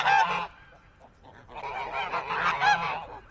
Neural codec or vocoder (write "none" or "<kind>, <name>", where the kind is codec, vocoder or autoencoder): none